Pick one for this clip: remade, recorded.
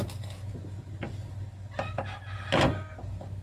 recorded